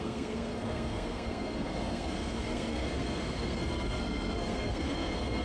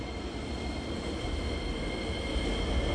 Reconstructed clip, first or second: first